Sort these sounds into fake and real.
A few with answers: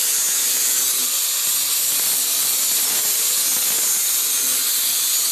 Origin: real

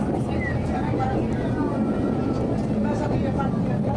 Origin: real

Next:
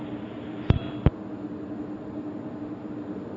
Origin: real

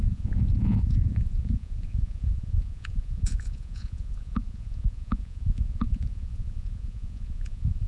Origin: fake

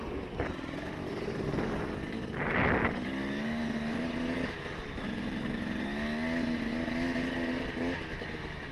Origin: real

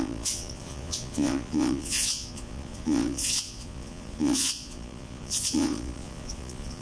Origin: fake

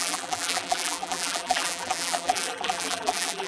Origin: fake